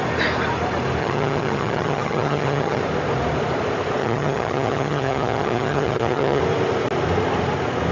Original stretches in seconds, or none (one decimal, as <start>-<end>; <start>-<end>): 0.0-1.0; 2.8-4.0; 6.4-7.9